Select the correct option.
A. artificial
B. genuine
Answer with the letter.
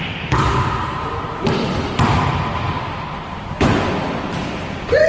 A